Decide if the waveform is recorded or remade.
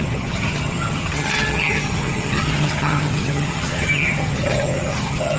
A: remade